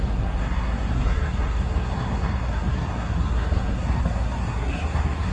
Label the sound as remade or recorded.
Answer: remade